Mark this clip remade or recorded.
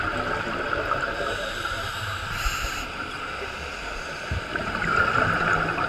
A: recorded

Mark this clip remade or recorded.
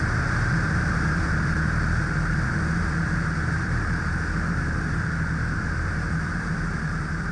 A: remade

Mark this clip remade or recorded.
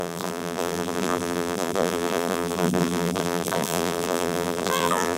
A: remade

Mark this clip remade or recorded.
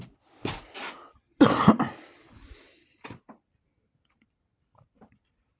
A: remade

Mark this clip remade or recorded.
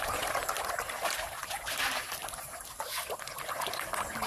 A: recorded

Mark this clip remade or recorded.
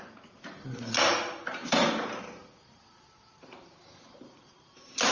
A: remade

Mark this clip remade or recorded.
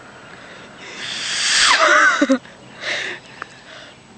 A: recorded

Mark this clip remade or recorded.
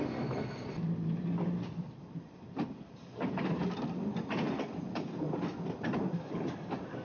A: recorded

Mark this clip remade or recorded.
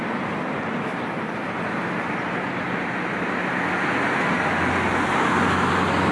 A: recorded